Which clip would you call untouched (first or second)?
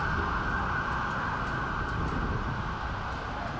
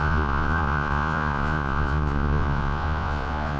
first